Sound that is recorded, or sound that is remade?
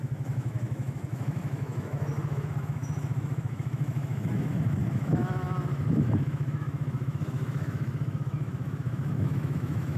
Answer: remade